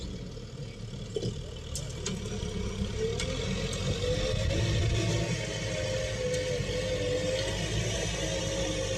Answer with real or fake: real